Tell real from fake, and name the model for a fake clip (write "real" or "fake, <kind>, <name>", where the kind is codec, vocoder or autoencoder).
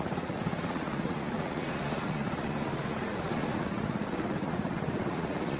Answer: fake, vocoder, Vocos